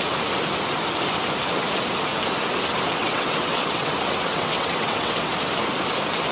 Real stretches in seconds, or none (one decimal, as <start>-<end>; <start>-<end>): 0.0-3.0; 3.9-4.3; 5.3-6.3